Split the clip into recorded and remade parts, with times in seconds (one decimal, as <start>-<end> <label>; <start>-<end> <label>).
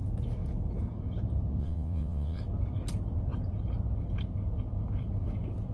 0.0-1.6 recorded; 1.6-2.4 remade; 2.4-5.7 recorded